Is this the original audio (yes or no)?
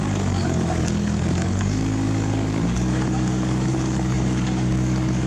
no